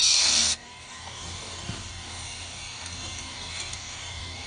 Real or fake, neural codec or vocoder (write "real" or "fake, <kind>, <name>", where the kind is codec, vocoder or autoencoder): fake, codec, DAC